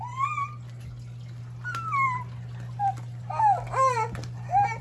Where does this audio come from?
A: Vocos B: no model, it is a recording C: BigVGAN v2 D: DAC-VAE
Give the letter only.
B